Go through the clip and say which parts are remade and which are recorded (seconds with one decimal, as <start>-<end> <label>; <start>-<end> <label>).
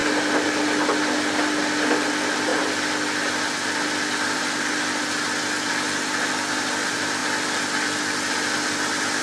0.0-9.2 recorded